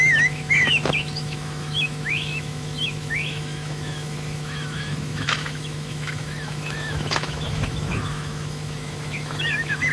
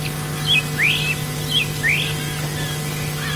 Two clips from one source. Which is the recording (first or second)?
second